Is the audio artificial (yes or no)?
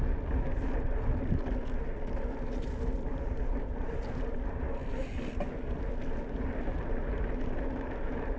no